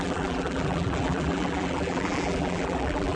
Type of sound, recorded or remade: remade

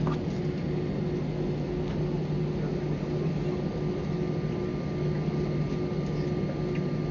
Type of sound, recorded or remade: recorded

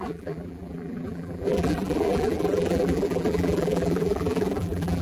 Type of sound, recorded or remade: remade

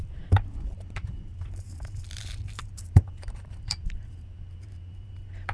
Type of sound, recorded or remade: remade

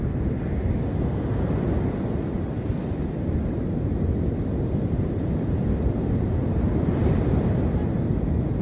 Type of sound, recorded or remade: recorded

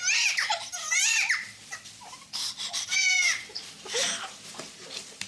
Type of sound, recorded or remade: remade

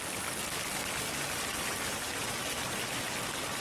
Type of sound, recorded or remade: recorded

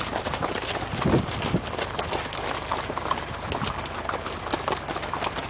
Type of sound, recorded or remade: recorded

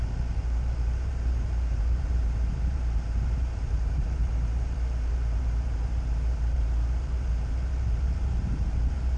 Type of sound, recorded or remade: remade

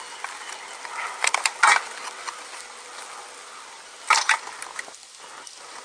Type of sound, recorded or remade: recorded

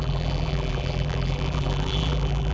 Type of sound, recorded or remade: remade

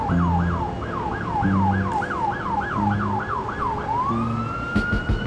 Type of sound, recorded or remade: recorded